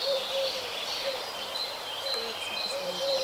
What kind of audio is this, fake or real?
fake